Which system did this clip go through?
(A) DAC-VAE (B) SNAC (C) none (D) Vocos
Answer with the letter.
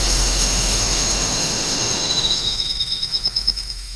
A